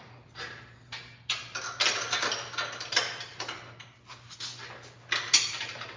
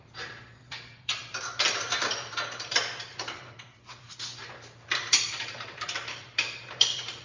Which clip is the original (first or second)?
first